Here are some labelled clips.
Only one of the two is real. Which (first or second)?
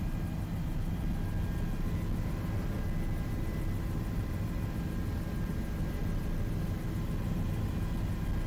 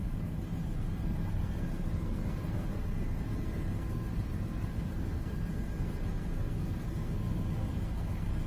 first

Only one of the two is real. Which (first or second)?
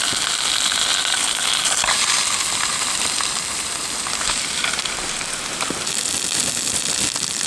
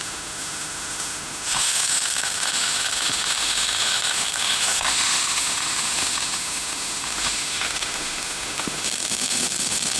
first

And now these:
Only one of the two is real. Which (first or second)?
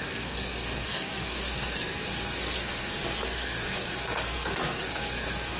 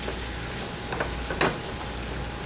second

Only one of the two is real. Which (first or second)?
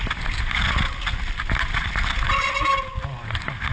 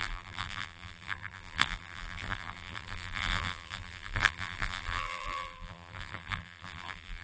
first